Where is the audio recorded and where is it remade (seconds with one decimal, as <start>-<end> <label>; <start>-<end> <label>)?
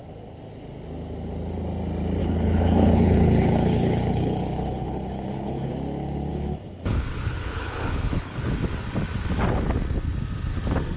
0.0-2.2 recorded; 2.2-5.7 remade; 5.7-6.3 recorded; 6.3-8.5 remade; 8.5-11.0 recorded